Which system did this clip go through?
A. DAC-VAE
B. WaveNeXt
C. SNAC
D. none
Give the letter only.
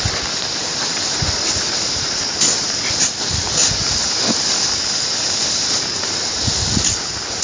D